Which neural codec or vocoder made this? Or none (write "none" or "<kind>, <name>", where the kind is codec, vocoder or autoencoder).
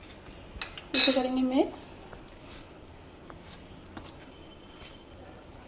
none